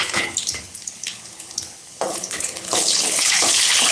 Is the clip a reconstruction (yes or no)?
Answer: yes